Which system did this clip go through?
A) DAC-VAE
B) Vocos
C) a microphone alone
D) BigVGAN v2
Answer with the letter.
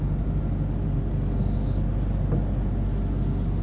C